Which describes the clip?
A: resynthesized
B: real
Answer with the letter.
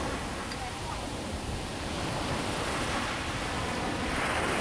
B